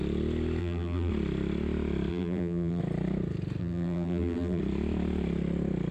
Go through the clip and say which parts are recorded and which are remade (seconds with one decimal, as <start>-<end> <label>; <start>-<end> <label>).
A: 0.0-0.6 recorded; 0.6-1.1 remade; 1.1-2.1 recorded; 2.1-2.8 remade; 2.8-3.6 recorded; 3.6-4.6 remade; 4.6-5.9 recorded